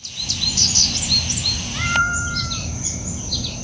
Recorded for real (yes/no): yes